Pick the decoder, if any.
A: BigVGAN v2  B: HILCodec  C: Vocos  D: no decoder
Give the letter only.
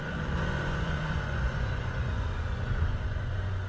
C